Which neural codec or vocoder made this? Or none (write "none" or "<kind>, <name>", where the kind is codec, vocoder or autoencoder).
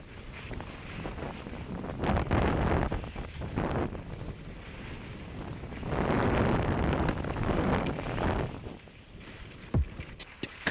none